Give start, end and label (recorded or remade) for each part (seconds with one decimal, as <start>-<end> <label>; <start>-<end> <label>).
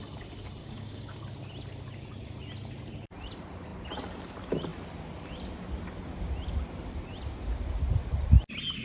0.0-0.6 recorded; 0.6-1.2 remade; 1.2-8.8 recorded